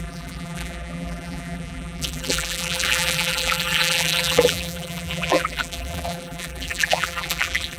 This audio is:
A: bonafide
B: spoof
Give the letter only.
B